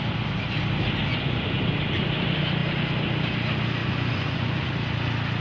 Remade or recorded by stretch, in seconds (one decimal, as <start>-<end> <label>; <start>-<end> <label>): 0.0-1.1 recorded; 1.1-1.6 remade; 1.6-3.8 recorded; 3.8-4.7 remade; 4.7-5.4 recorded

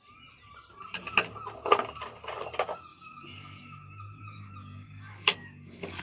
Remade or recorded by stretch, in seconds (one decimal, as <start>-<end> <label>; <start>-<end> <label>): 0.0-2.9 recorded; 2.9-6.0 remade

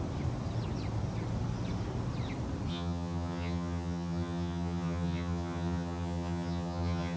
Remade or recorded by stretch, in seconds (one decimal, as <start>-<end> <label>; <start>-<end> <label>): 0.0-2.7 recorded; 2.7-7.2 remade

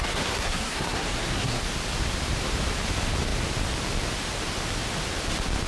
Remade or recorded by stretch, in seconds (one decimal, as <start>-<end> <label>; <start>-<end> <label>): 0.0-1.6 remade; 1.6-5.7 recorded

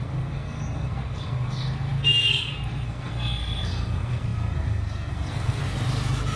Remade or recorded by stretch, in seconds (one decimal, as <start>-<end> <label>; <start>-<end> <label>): 0.0-5.6 remade; 5.6-6.4 recorded

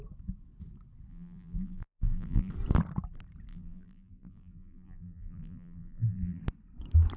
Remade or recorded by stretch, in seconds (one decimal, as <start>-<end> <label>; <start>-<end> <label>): 0.0-1.1 recorded; 1.1-2.5 remade; 2.5-3.5 recorded; 3.5-6.4 remade; 6.4-7.2 recorded